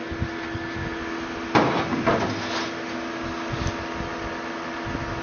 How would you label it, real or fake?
real